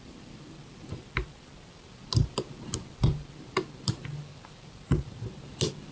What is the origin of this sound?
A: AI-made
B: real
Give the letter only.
B